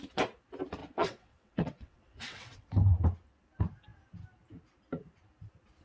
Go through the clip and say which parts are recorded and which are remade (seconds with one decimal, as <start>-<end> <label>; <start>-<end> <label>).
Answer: 0.0-0.8 recorded; 0.8-2.7 remade; 2.7-5.8 recorded